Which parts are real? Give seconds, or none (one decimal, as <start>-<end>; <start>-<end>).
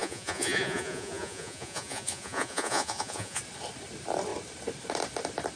3.4-5.6